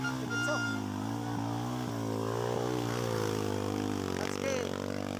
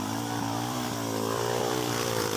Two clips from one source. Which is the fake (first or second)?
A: second